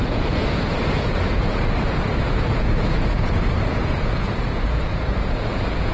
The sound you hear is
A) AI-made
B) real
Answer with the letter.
A